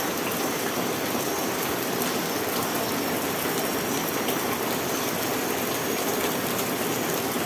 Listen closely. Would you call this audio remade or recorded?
recorded